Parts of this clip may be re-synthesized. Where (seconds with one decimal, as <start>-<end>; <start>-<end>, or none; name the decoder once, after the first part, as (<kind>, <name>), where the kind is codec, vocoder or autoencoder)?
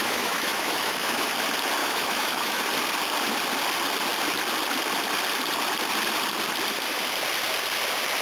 0.0-1.3 (autoencoder, DAC-VAE); 1.8-2.6